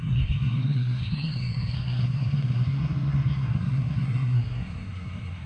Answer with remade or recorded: remade